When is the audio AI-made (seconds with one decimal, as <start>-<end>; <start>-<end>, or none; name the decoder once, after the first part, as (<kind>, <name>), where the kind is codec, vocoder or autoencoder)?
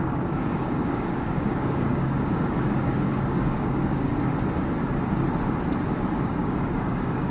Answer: 0.0-4.1 (codec, DAC); 6.2-7.3